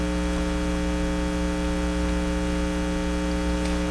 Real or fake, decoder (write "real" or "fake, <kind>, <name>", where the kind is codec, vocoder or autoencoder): real